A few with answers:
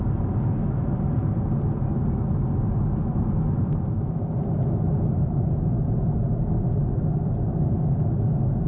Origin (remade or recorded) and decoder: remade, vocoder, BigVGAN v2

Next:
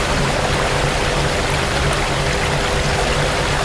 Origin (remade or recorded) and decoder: recorded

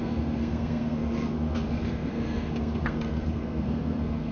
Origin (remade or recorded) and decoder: remade, codec, SNAC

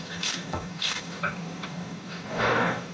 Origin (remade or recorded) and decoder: remade, codec, DAC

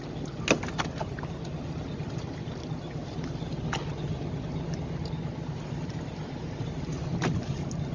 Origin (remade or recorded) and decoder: recorded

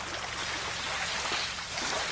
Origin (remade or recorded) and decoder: recorded